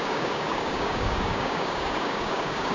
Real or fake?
fake